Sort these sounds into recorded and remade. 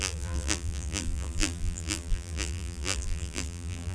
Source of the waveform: remade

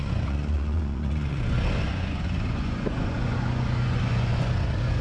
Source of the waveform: remade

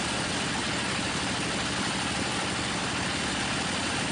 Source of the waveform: recorded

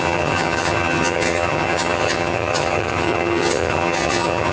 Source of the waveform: remade